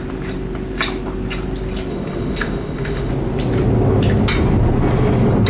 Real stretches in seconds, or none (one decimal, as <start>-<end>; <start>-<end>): 0.0-1.9; 3.1-5.5